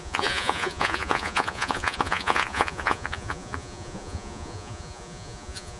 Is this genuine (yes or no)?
no